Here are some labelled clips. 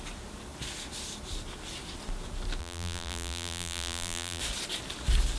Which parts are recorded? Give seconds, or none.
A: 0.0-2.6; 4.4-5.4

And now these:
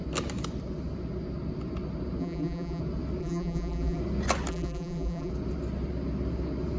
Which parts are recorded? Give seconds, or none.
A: 0.0-2.2; 2.8-3.2; 4.0-4.5; 5.3-6.8

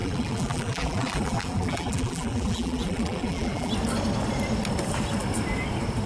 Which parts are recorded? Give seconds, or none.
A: 3.7-6.1

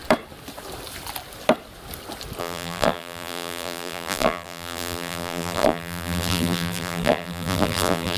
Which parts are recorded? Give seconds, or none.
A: 0.0-2.4

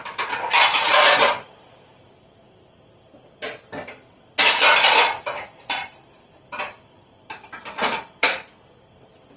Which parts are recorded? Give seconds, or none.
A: 0.0-9.4

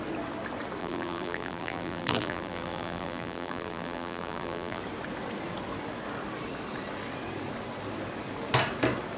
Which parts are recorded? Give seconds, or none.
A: 0.0-0.8; 4.8-9.2

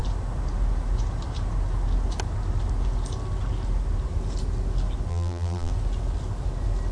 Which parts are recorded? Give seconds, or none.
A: 0.0-5.1; 5.7-6.9